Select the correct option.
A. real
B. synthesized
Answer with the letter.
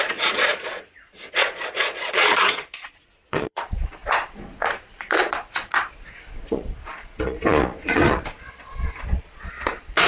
B